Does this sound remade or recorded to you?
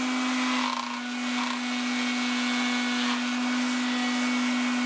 recorded